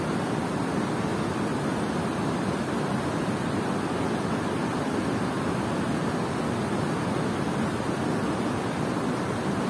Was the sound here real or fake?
real